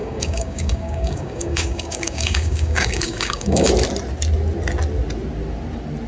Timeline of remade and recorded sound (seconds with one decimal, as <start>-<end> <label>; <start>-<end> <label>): 0.0-3.7 remade; 3.7-6.1 recorded

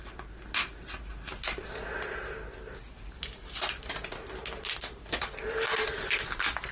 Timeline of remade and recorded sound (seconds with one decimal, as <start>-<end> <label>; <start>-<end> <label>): 0.0-6.7 recorded

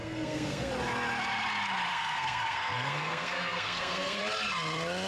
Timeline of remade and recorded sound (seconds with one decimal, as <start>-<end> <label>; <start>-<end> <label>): 0.0-0.7 remade; 0.7-1.9 recorded; 1.9-4.2 remade; 4.2-5.1 recorded

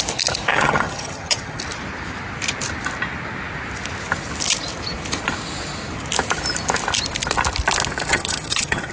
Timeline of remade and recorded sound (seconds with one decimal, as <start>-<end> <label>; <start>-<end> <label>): 0.0-0.5 recorded; 0.5-1.6 remade; 1.6-8.1 recorded; 8.1-8.9 remade

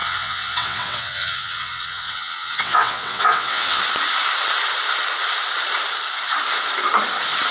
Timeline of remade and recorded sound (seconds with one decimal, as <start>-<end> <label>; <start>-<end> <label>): 0.0-3.8 remade; 3.8-7.5 recorded

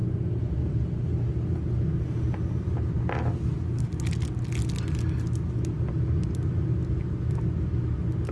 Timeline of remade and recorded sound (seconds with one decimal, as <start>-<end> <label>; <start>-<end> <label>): 0.0-8.3 recorded